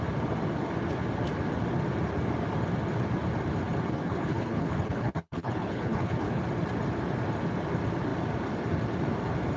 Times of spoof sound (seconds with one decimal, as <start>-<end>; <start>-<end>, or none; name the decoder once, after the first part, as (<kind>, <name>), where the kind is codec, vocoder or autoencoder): 4.0-6.4 (codec, HILCodec)